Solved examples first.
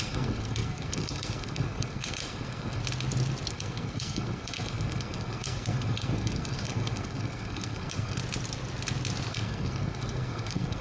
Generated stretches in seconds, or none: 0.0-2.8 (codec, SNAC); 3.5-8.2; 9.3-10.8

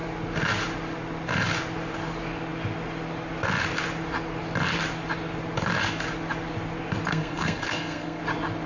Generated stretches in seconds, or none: 7.1-8.2 (codec, SNAC)

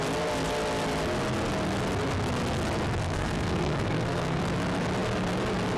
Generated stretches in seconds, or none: 3.0-4.4 (codec, SNAC)

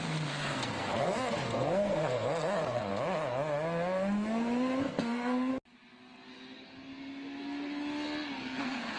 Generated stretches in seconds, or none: 0.0-2.9 (codec, SNAC); 4.8-5.5; 8.4-9.0

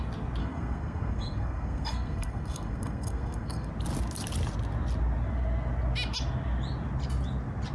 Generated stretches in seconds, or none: 0.4-3.7 (codec, SNAC)

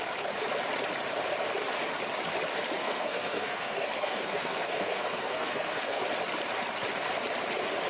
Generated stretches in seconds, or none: 2.8-6.0 (codec, SNAC)